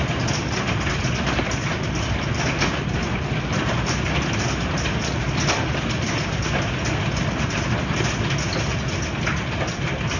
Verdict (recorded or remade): recorded